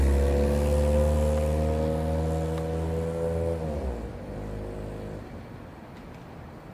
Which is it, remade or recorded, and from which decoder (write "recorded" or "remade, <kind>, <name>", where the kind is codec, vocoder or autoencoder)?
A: recorded